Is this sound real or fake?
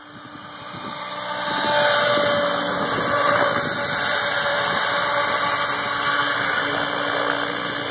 real